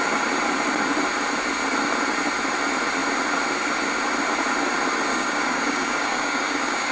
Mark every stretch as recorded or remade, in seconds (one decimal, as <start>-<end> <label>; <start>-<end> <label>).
0.0-5.1 recorded; 5.1-6.9 remade

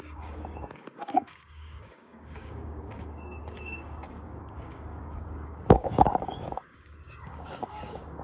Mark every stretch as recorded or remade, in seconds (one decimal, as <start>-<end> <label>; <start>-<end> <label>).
0.0-8.2 remade

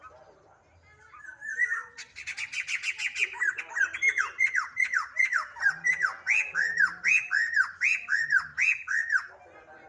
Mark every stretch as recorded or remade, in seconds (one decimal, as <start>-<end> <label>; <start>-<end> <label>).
0.0-9.9 recorded

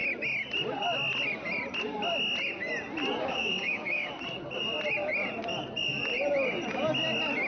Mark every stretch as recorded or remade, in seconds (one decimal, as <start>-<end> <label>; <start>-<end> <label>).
0.0-3.2 recorded; 3.2-4.1 remade; 4.1-7.5 recorded